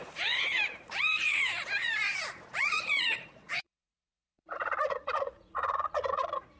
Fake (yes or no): yes